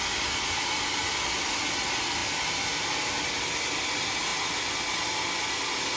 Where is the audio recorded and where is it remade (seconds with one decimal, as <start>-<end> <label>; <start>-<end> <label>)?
0.0-6.0 recorded